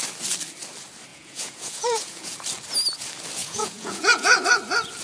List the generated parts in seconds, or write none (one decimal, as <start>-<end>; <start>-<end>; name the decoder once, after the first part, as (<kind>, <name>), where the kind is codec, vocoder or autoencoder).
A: 1.1-2.4 (vocoder, Vocos); 3.4-4.4